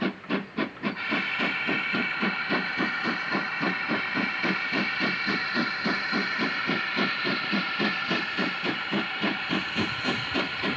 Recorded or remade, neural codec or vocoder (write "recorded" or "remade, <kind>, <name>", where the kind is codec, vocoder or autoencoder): remade, vocoder, BigVGAN v2